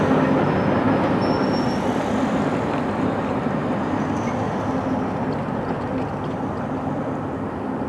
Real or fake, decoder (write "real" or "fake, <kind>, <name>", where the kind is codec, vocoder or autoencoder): real